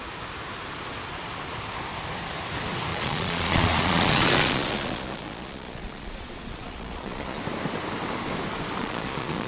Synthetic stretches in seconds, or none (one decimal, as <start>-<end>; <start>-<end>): 2.9-7.4; 8.8-9.5

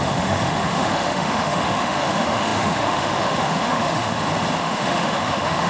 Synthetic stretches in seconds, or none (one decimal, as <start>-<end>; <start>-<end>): 0.0-4.1; 4.6-5.7

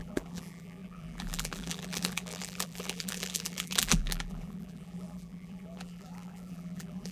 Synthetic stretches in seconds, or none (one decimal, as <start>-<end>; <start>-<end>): 0.0-7.1

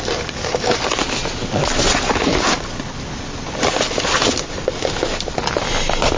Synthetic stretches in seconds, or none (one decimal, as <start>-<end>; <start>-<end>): none